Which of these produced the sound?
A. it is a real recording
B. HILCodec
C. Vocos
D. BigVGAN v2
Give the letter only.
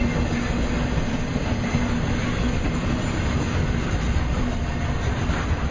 A